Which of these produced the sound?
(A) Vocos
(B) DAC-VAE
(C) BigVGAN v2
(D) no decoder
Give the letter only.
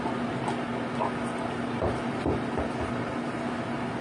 D